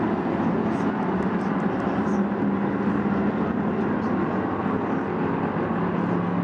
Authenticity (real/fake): real